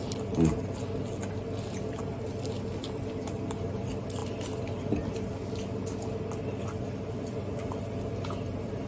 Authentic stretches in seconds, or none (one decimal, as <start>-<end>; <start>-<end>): 0.0-8.9